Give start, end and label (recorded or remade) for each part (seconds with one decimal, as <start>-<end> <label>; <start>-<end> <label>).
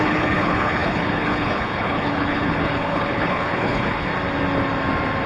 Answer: 0.0-4.1 remade; 4.1-5.3 recorded